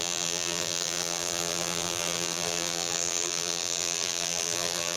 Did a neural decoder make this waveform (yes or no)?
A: yes